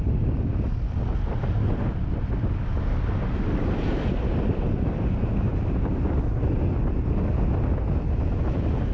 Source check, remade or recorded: recorded